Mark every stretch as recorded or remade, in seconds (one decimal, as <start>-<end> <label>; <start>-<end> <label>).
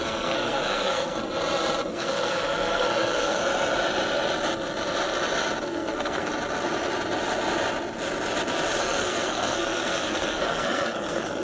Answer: 0.0-1.2 remade; 1.2-1.9 recorded; 1.9-3.4 remade; 3.4-5.6 recorded; 5.6-6.3 remade; 6.3-8.8 recorded; 8.8-11.4 remade